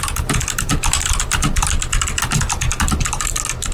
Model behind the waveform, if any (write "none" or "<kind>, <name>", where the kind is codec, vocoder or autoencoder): none